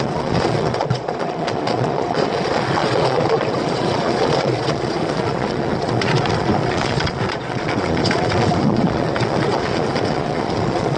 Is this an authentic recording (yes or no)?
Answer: no